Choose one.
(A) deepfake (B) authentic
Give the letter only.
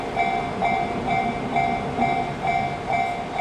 B